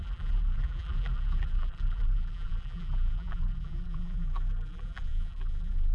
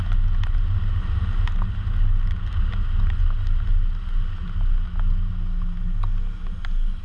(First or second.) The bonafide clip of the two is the second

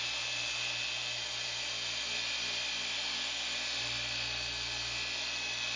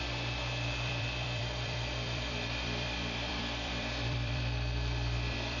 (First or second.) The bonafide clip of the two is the first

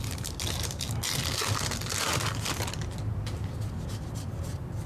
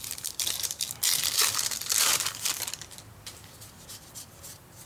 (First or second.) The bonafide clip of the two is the first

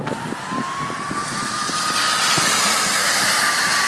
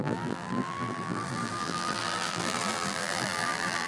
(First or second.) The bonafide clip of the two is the first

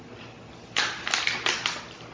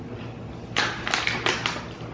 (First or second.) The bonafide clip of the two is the second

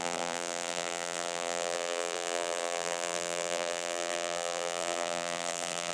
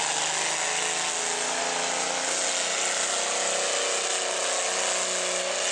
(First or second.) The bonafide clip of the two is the second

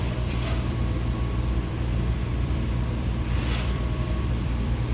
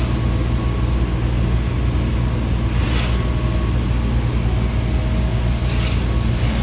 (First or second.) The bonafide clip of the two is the second